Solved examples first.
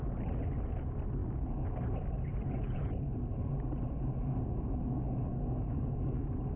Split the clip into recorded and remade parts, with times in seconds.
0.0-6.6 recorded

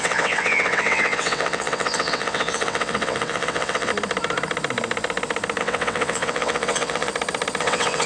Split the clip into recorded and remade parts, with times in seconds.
0.0-3.9 remade; 3.9-5.6 recorded; 5.6-7.1 remade; 7.1-7.6 recorded; 7.6-8.1 remade

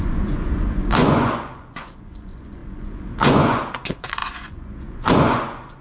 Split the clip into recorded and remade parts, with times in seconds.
0.0-5.8 remade

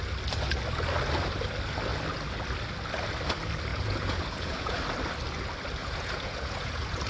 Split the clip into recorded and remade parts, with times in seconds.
0.0-3.7 recorded; 3.7-4.8 remade; 4.8-5.8 recorded; 5.8-7.1 remade